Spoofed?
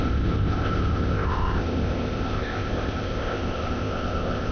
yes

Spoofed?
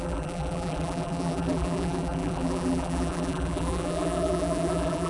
yes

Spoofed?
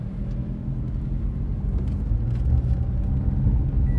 no